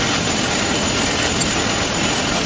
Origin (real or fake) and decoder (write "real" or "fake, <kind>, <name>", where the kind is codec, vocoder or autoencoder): real